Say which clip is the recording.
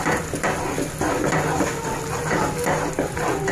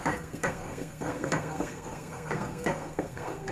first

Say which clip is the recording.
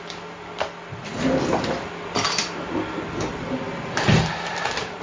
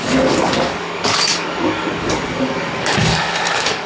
first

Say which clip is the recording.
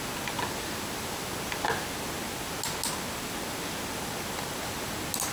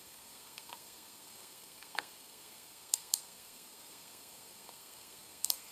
first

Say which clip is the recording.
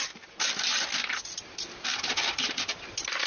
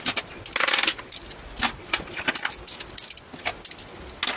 second